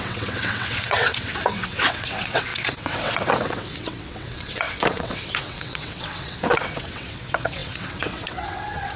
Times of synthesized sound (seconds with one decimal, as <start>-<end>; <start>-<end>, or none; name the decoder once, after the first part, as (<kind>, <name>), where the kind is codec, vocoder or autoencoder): 0.0-9.0 (vocoder, WaveNeXt)